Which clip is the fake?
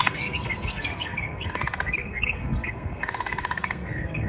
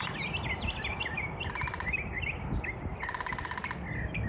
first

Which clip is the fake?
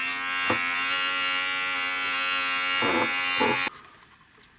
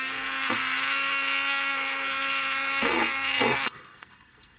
second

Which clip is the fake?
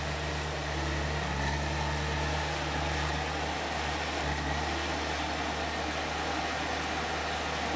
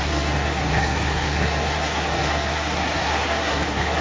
second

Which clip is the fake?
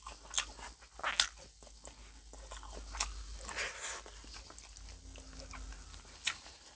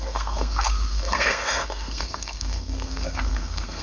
second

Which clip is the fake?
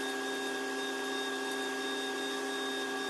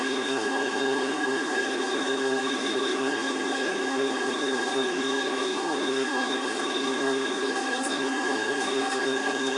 second